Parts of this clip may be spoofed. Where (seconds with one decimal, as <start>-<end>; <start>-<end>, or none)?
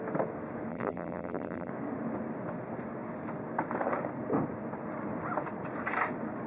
0.7-1.7